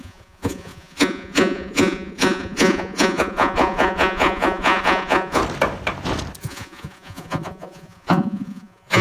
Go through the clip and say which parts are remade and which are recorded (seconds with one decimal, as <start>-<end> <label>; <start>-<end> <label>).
0.0-5.4 remade; 5.4-6.4 recorded; 6.4-9.0 remade